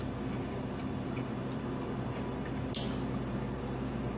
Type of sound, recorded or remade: recorded